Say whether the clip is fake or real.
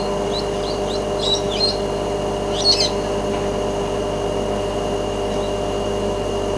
real